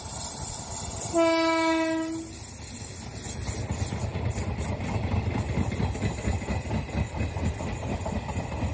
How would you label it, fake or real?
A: real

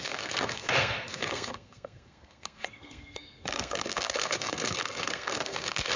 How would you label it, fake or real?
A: fake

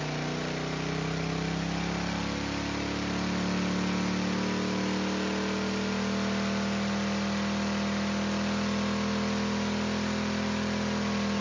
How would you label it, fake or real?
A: real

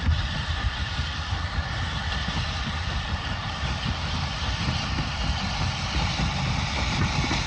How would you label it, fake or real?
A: fake